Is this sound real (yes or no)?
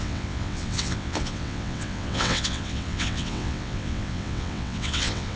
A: no